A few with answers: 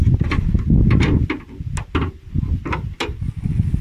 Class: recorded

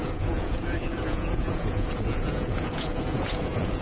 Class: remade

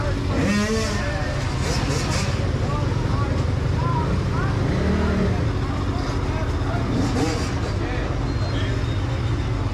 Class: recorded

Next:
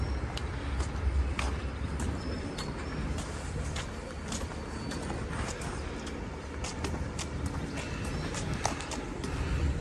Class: recorded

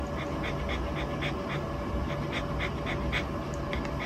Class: recorded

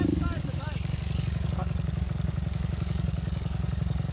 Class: remade